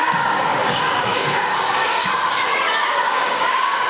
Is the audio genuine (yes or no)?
no